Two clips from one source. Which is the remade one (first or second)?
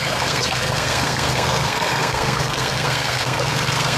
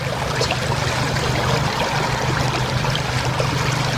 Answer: first